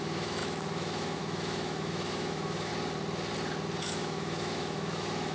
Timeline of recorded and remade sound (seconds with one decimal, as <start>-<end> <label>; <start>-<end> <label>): 0.0-2.7 remade; 2.7-3.8 recorded; 3.8-5.3 remade